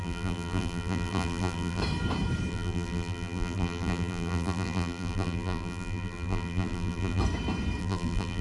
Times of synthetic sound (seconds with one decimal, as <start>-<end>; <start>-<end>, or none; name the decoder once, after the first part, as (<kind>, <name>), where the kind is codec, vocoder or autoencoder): 0.0-1.8 (vocoder, BigVGAN v2); 2.5-7.2; 7.8-8.4